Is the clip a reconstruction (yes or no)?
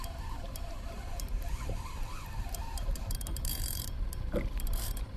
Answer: yes